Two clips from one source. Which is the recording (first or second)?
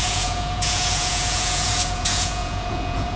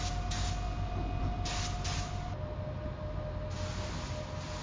second